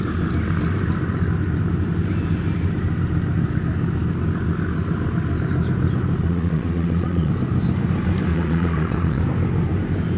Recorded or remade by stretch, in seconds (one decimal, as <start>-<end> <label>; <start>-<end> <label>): 0.0-6.2 recorded; 6.2-7.3 remade; 7.3-8.3 recorded; 8.3-9.2 remade; 9.2-10.2 recorded